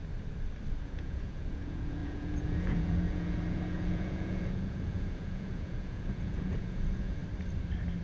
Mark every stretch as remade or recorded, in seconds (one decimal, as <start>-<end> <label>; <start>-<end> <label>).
0.0-0.8 recorded; 0.8-7.2 remade; 7.2-8.0 recorded